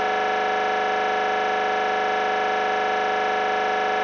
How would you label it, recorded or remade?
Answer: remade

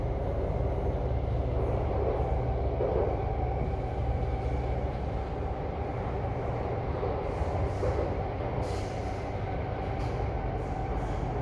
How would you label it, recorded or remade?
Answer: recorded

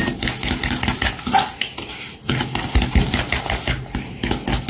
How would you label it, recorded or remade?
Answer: recorded